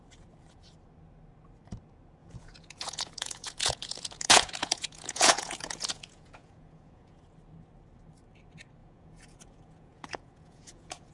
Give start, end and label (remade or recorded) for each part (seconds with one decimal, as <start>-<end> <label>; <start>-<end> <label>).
0.0-2.2 recorded; 2.2-7.2 remade; 7.2-8.8 recorded; 8.8-11.1 remade